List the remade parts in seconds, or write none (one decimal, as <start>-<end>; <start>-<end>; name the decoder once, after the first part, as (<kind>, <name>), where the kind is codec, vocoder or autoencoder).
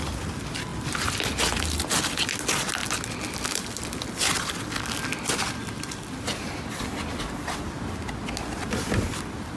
none